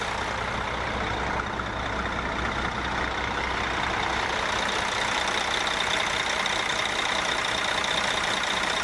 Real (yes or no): yes